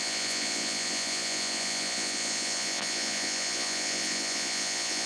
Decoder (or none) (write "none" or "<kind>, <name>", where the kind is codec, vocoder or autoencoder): vocoder, Vocos